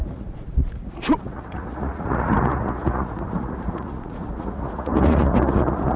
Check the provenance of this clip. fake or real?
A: fake